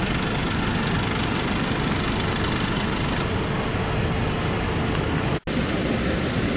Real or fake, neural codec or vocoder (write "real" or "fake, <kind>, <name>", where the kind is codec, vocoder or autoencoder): real